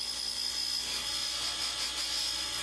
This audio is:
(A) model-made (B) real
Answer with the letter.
B